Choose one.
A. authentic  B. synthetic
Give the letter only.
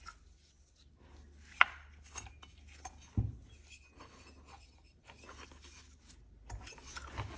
A